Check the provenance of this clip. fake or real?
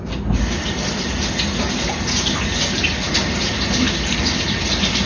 real